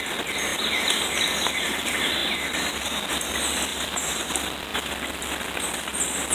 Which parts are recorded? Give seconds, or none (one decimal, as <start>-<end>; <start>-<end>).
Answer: 0.0-3.7; 4.3-6.3